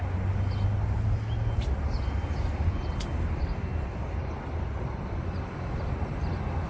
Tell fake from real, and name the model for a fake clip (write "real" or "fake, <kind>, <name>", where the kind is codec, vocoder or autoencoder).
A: real